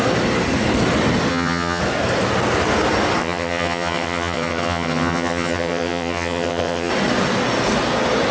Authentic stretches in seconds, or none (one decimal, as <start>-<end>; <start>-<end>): 0.0-1.3; 1.8-3.2; 6.9-8.3